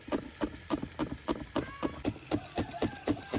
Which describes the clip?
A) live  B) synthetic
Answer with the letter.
A